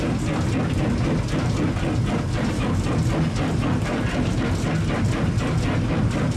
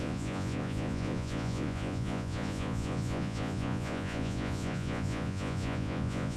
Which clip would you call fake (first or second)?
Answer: second